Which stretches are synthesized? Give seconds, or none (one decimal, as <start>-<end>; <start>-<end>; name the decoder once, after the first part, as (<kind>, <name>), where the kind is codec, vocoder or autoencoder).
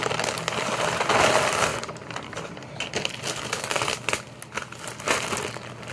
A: 1.7-2.6 (vocoder, BigVGAN v2)